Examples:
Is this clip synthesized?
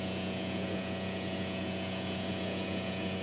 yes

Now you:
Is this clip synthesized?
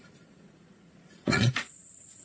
yes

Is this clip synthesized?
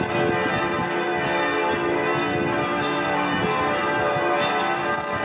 no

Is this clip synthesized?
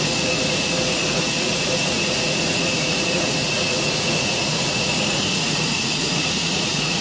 yes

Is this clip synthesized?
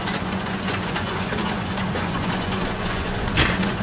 yes